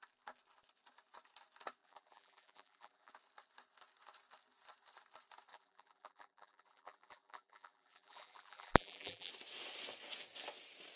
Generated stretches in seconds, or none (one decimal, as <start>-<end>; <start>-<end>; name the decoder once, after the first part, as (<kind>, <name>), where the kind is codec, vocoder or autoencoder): 1.8-3.1 (vocoder, BigVGAN v2); 5.5-9.3